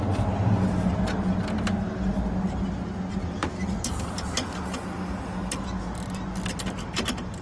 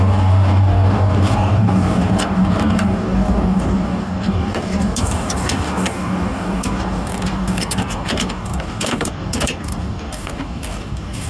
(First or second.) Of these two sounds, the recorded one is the first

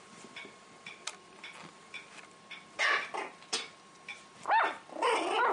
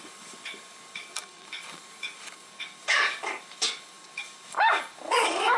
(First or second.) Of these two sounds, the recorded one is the first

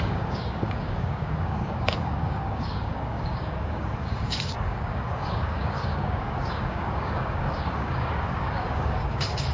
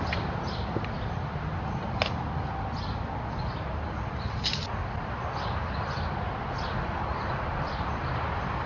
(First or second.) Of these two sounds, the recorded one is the second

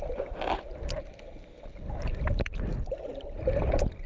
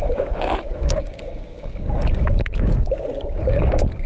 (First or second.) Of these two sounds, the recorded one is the first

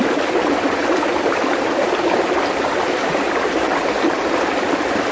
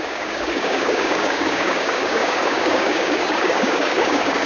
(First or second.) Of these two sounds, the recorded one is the first